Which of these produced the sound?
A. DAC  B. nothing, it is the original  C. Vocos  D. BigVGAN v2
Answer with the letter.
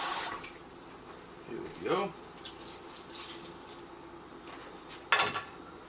B